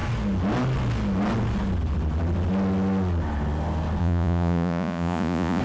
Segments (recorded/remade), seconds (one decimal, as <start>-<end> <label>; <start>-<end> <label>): 0.0-4.0 recorded; 4.0-5.6 remade